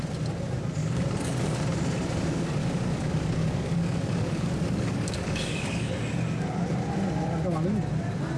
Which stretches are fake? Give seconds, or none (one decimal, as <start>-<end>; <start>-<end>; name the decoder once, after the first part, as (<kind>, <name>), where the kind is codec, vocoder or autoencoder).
0.8-1.6 (codec, DAC); 2.6-5.9